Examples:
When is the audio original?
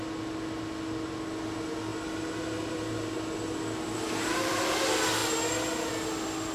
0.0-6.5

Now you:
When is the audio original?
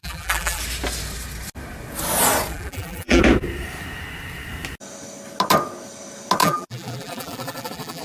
0.6-2.5; 3.2-6.4